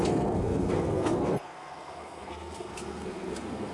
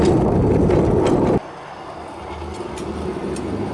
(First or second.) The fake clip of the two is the first